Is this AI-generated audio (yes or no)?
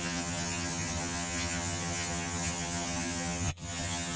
yes